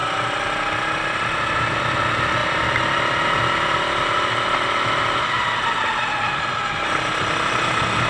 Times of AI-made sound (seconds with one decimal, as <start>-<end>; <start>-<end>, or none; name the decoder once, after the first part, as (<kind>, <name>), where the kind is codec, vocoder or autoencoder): none

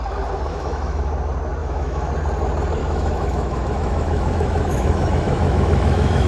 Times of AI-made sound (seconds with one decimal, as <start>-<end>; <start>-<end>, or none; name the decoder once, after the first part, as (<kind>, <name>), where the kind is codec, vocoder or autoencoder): 0.5-1.1 (autoencoder, DAC-VAE); 1.6-2.1; 2.8-6.3

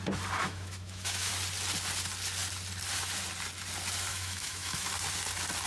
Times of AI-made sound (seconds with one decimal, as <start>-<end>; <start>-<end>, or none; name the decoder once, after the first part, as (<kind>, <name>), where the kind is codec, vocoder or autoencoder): 0.4-1.3 (autoencoder, DAC-VAE); 4.1-4.9

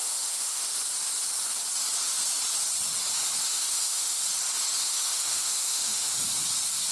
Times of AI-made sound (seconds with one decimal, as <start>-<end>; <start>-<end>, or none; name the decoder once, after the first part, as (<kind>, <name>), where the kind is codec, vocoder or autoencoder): 0.0-0.7 (autoencoder, DAC-VAE); 3.5-4.2; 4.8-6.2